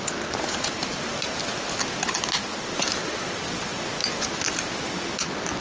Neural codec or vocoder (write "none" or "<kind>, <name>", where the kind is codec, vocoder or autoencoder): none